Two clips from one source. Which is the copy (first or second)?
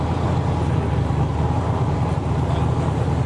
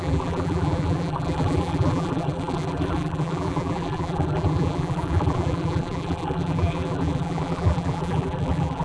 second